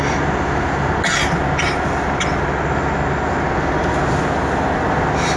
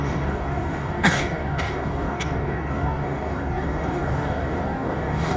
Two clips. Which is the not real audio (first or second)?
second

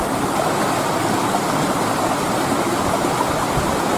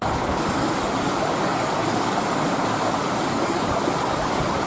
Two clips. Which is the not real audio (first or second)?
second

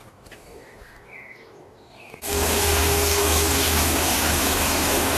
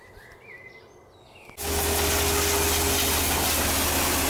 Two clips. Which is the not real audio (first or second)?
first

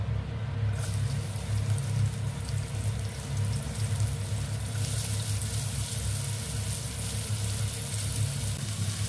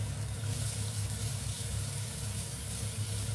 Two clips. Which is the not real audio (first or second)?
second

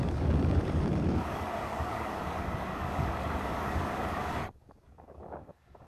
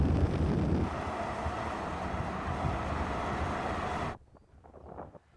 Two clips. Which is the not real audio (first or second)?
first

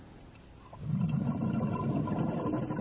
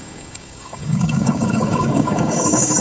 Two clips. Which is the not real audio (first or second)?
second